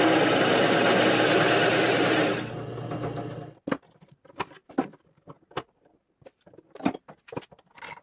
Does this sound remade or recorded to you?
recorded